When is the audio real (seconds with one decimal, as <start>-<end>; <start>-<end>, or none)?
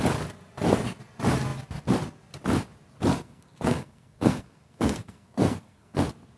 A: 0.0-3.1; 6.0-6.4